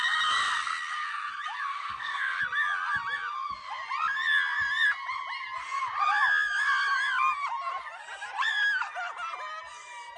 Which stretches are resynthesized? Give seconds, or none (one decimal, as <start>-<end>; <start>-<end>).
1.7-2.4

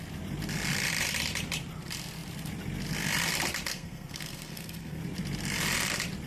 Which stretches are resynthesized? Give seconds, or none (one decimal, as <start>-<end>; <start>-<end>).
3.7-5.0

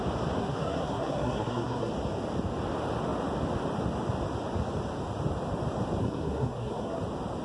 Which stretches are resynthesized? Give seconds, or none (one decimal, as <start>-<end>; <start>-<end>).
0.4-1.9; 6.0-7.0